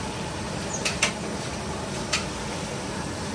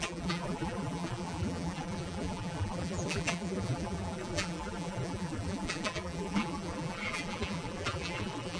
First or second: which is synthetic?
second